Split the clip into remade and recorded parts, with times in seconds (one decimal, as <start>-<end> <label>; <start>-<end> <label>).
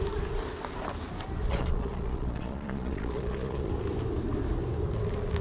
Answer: 0.0-1.5 recorded; 1.5-3.7 remade; 3.7-5.4 recorded